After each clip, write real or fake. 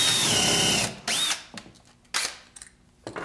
real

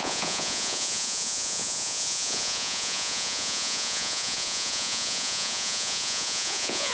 fake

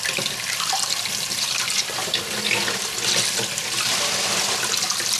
real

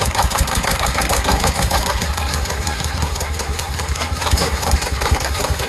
fake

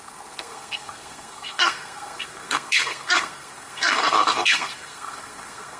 fake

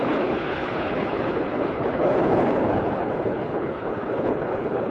fake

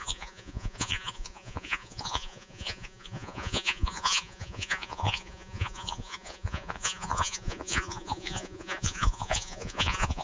fake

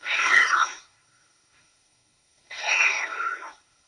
fake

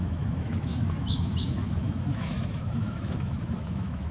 fake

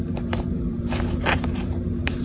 fake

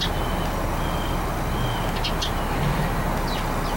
real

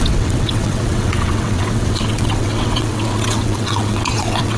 fake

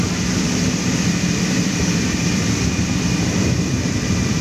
fake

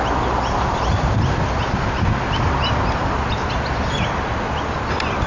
real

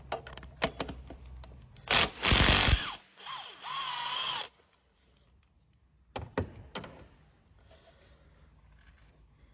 real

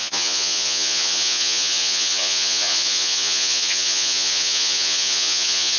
fake